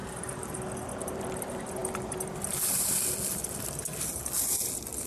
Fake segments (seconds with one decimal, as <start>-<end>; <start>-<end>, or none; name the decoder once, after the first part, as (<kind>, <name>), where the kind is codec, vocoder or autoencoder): 0.0-0.6 (vocoder, BigVGAN v2)